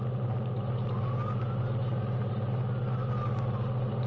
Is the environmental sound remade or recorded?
recorded